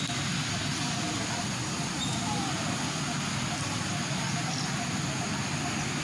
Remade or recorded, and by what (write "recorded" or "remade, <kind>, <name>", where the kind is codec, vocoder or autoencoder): recorded